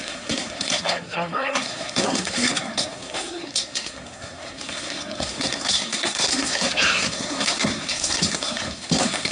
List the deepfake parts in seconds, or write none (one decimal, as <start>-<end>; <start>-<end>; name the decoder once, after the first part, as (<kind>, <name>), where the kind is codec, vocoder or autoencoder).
0.0-9.3 (codec, SNAC)